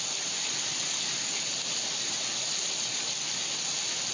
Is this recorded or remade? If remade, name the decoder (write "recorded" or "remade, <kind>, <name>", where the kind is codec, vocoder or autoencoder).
recorded